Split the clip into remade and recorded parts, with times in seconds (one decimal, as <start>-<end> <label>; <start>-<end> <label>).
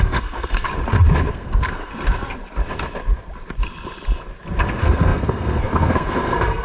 0.0-0.7 remade; 0.7-1.3 recorded; 1.3-1.9 remade; 1.9-4.6 recorded; 4.6-6.6 remade